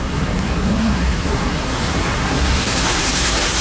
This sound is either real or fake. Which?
fake